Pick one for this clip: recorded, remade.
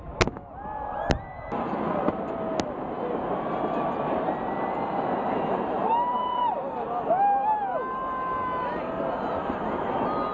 recorded